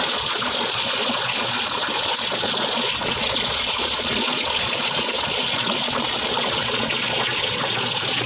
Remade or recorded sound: remade